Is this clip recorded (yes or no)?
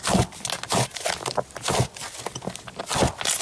yes